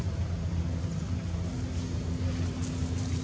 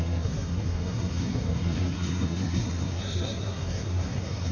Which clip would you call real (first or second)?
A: first